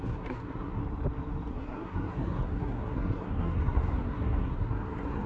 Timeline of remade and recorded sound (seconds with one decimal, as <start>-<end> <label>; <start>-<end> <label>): 0.0-0.8 remade; 0.8-1.5 recorded; 1.5-5.3 remade